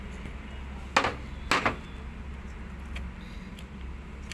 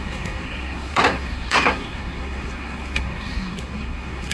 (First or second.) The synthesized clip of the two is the second